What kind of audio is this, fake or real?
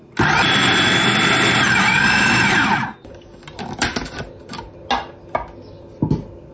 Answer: real